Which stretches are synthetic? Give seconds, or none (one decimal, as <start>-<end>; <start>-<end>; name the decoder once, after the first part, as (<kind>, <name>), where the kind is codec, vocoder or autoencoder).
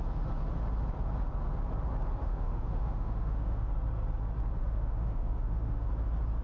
2.2-3.7 (autoencoder, DAC-VAE); 4.6-5.9